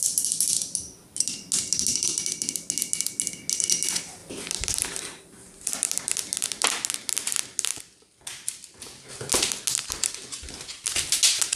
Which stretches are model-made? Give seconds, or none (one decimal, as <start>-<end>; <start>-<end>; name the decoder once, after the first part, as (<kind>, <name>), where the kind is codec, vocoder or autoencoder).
4.2-6.9 (vocoder, BigVGAN v2); 7.7-9.1

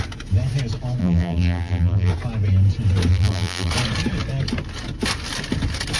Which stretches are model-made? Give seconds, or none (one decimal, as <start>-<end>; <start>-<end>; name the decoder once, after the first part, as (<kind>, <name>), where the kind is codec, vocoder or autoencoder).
1.0-2.1 (vocoder, BigVGAN v2); 3.1-3.7